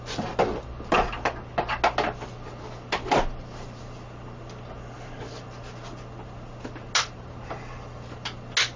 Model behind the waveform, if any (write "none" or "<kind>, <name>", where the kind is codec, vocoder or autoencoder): none